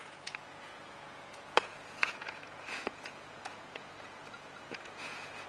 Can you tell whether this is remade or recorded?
remade